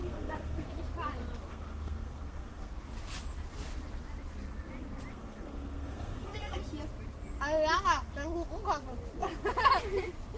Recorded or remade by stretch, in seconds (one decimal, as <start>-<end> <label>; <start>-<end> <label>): 0.0-0.7 remade; 0.7-1.5 recorded; 1.5-2.7 remade; 2.7-5.1 recorded; 5.1-6.6 remade; 6.6-10.4 recorded